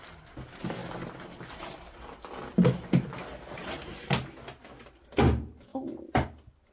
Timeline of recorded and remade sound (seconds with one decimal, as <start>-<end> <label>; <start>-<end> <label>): 0.0-5.7 recorded; 5.7-6.7 remade